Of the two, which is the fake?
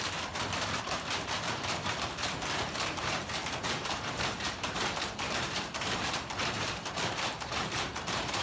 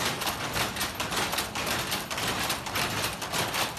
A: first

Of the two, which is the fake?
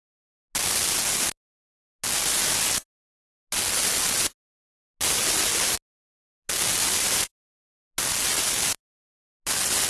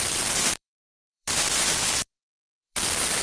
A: second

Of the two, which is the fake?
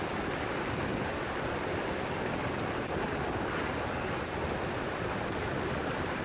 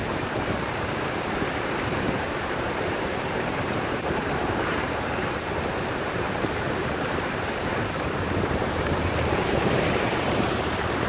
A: second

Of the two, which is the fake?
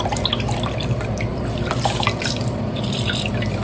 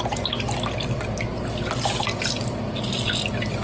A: first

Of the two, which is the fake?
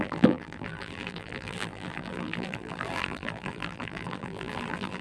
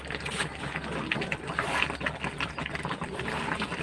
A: first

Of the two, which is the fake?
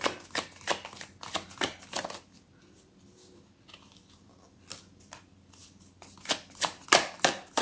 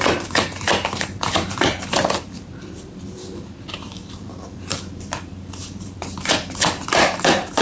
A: second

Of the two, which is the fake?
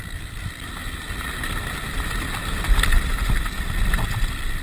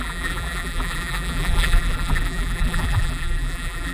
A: second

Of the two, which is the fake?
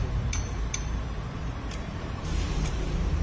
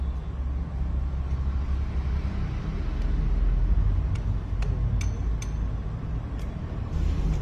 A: first